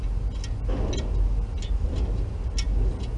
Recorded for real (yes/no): yes